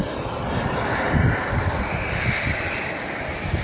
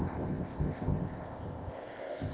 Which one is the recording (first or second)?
first